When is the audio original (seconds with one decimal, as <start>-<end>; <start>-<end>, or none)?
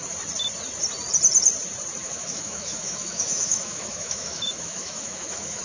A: 0.0-2.0